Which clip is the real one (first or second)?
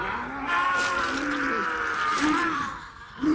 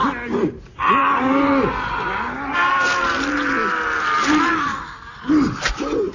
second